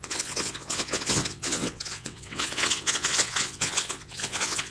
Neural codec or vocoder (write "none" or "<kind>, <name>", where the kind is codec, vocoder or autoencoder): vocoder, WaveNeXt